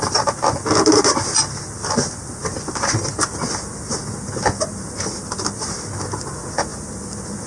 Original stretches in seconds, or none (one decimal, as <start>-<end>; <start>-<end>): 0.0-7.5